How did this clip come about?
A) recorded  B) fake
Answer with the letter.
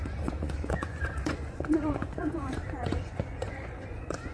B